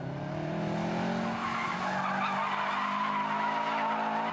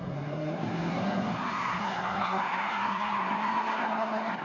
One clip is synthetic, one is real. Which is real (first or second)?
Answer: first